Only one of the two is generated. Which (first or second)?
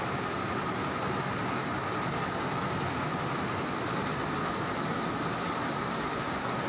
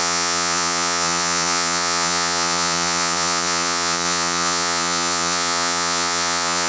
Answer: second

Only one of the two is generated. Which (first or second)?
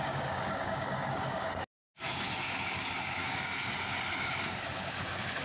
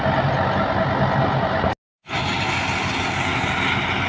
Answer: first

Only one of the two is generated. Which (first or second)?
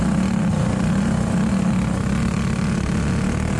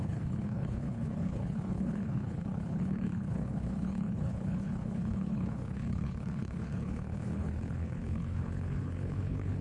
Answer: second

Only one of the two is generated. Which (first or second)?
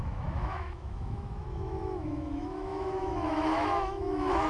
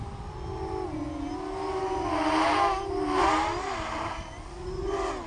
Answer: first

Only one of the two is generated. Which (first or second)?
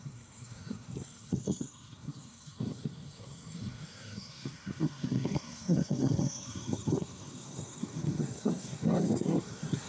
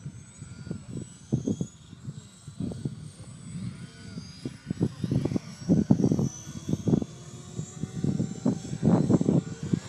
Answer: first